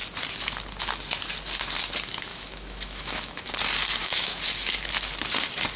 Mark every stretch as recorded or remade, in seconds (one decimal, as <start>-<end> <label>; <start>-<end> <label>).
0.0-2.3 recorded; 2.3-3.5 remade; 3.5-4.0 recorded; 4.0-4.7 remade; 4.7-5.8 recorded